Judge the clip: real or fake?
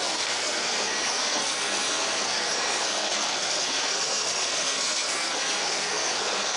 fake